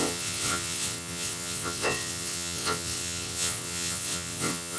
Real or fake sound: fake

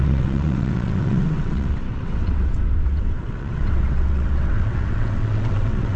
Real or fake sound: fake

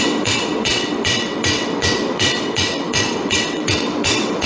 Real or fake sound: fake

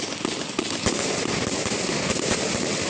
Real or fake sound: real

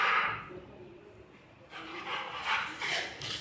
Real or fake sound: real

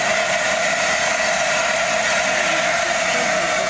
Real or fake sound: real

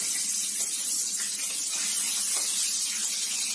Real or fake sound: real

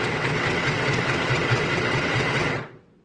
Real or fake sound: fake